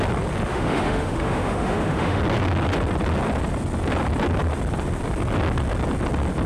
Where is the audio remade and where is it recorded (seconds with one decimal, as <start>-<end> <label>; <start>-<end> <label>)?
0.0-0.5 recorded; 0.5-2.2 remade; 2.2-6.5 recorded